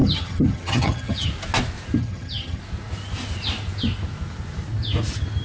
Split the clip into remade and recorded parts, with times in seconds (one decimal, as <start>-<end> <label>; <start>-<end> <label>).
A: 0.0-1.3 remade; 1.3-2.0 recorded; 2.0-2.6 remade; 2.6-5.4 recorded